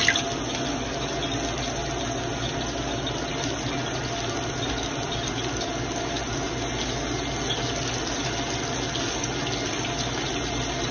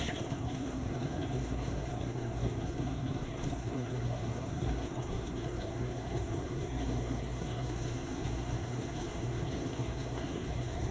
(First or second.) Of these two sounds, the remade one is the second